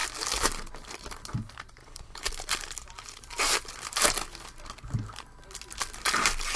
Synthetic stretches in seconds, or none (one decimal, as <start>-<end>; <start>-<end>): 1.8-2.3